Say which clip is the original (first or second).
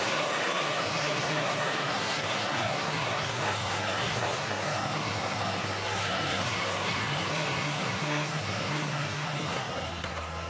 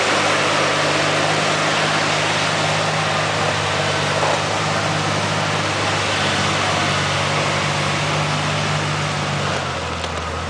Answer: second